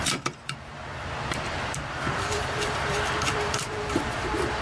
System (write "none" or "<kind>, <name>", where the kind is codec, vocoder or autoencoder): vocoder, BigVGAN v2